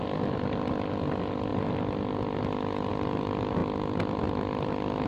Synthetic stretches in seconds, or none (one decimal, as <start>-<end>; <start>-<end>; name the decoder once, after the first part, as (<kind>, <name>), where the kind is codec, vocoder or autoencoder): none